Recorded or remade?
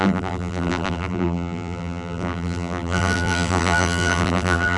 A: remade